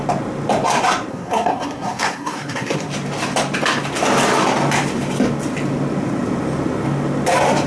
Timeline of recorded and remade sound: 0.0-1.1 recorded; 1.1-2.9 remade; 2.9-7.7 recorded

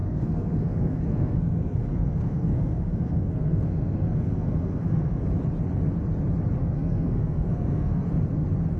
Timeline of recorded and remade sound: 0.0-5.2 remade; 5.2-6.6 recorded; 6.6-8.1 remade; 8.1-8.8 recorded

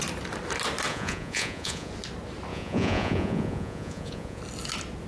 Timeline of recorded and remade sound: 0.0-0.9 recorded; 0.9-1.9 remade; 1.9-2.5 recorded; 2.5-4.4 remade; 4.4-5.1 recorded

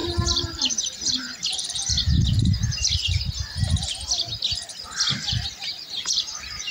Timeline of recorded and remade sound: 0.0-2.2 remade; 2.2-5.6 recorded; 5.6-6.7 remade

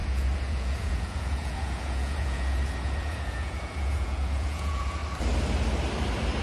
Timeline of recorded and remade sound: 0.0-5.0 remade; 5.0-6.4 recorded